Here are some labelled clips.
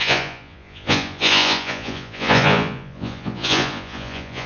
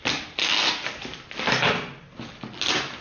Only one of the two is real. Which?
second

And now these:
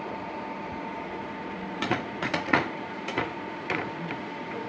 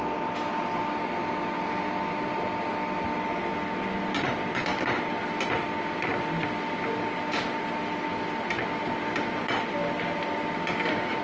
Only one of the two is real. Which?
second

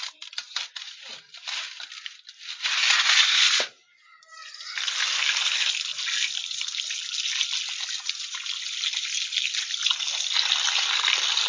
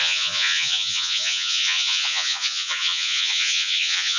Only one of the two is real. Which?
first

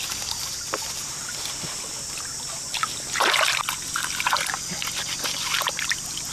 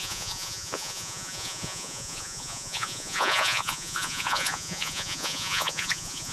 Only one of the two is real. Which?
first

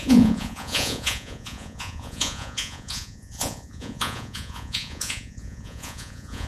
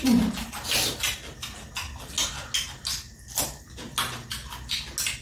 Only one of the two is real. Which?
second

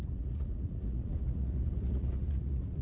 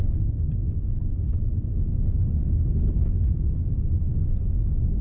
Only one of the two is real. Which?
second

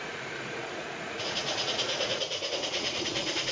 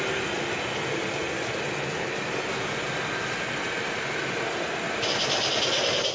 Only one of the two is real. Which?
second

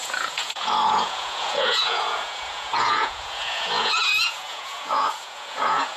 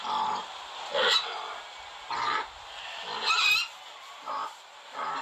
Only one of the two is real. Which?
second